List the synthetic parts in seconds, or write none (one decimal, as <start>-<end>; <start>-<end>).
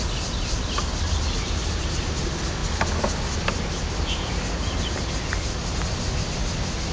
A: none